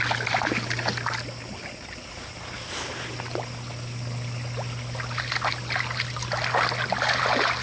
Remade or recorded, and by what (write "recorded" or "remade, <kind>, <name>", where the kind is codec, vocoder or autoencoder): recorded